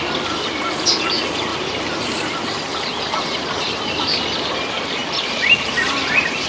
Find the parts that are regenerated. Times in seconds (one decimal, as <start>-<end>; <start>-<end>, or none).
1.5-2.1